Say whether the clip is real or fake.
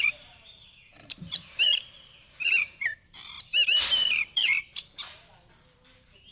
fake